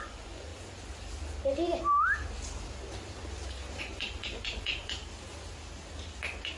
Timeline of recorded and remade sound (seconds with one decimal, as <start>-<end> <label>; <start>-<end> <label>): 0.0-0.5 remade; 0.5-3.8 recorded; 3.8-5.0 remade; 5.0-6.6 recorded